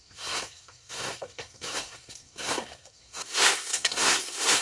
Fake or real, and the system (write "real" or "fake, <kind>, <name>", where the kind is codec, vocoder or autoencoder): fake, codec, SNAC